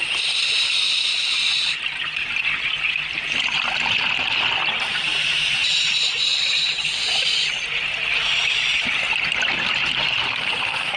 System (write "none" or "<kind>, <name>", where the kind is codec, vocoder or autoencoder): none